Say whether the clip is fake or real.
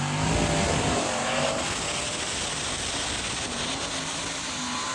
real